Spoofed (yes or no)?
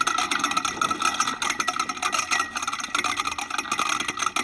no